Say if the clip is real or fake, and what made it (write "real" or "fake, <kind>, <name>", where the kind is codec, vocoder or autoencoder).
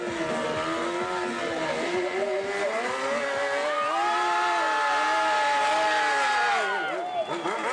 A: real